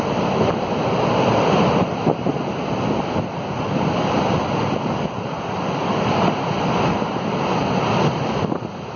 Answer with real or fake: real